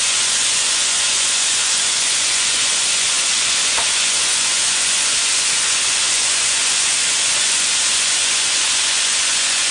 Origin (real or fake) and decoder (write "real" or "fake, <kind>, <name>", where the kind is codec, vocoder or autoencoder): fake, vocoder, Vocos